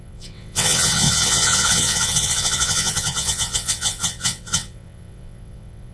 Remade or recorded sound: remade